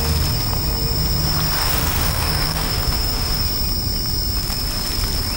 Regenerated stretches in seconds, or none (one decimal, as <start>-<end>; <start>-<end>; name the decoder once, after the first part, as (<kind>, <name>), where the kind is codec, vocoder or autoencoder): 1.6-3.4 (autoencoder, DAC-VAE)